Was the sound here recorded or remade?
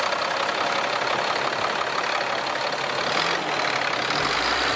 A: recorded